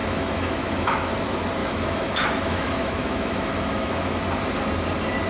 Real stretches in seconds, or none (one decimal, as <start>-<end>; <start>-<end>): 1.1-1.6; 4.2-5.3